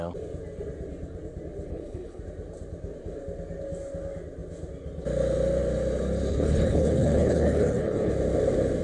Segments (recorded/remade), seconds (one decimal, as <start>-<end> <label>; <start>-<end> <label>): 0.0-1.7 recorded; 1.7-2.2 remade; 2.2-6.3 recorded; 6.3-8.1 remade; 8.1-8.8 recorded